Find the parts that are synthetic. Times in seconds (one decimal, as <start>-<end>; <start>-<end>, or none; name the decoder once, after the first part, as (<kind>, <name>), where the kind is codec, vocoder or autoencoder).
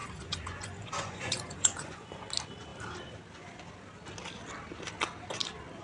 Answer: 0.0-2.3 (vocoder, Vocos)